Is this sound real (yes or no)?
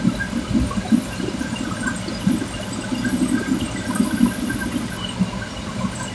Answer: yes